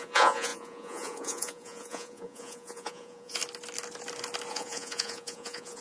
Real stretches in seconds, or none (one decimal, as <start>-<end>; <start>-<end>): 3.4-4.5